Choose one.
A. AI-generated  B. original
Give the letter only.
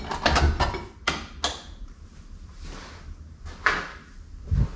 B